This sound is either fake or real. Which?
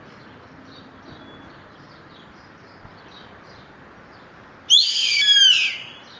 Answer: real